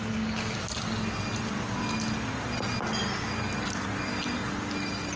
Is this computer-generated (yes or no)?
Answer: no